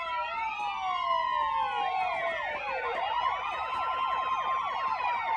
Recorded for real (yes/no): yes